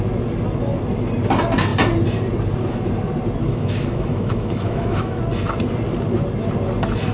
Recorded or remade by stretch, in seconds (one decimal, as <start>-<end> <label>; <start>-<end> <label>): 0.0-3.4 recorded; 3.4-5.2 remade; 5.2-7.1 recorded